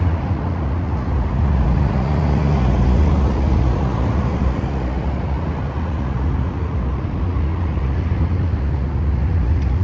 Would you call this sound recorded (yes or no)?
no